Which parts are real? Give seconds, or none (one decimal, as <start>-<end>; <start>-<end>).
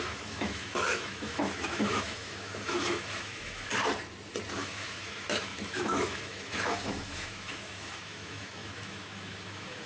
3.7-4.5